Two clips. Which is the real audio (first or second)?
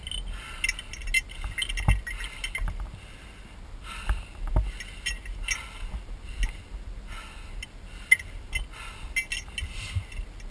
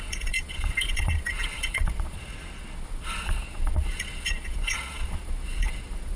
first